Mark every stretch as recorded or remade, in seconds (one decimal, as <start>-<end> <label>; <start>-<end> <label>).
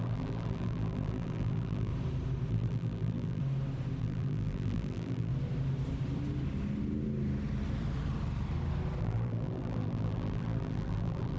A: 0.0-1.9 remade; 1.9-2.5 recorded; 2.5-3.4 remade; 3.4-4.0 recorded; 4.0-5.3 remade; 5.3-9.0 recorded; 9.0-11.4 remade